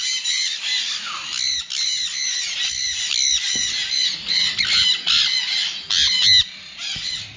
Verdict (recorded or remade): recorded